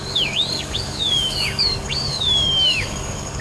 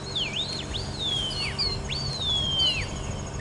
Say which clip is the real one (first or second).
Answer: second